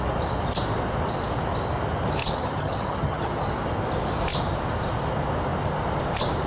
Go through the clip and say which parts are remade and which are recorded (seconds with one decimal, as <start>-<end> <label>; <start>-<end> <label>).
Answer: 0.0-2.2 recorded; 2.2-3.5 remade; 3.5-6.5 recorded